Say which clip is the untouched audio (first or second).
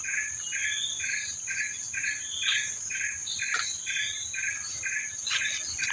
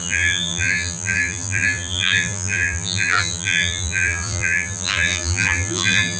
first